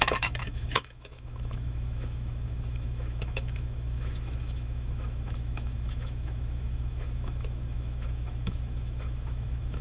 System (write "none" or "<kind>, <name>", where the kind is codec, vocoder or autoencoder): autoencoder, DAC-VAE